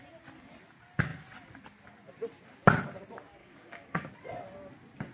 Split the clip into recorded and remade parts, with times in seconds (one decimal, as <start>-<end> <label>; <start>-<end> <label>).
0.0-3.4 recorded; 3.4-4.1 remade; 4.1-5.1 recorded